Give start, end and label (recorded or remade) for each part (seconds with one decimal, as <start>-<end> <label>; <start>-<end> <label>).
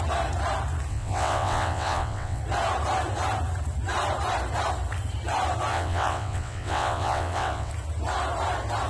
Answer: 0.0-0.9 recorded; 0.9-2.4 remade; 2.4-5.7 recorded; 5.7-7.7 remade; 7.7-8.9 recorded